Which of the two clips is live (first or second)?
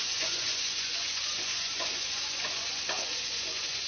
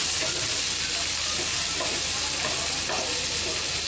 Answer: second